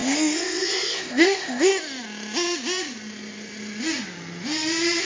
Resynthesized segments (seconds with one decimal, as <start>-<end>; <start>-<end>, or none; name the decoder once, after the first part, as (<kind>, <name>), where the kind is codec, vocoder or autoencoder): 0.0-1.7 (codec, ZipCodec)